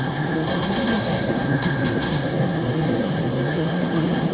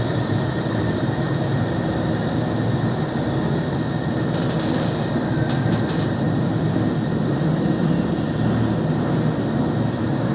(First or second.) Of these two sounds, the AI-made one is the first